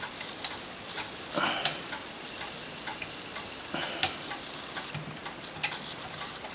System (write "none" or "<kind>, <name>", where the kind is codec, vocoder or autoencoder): none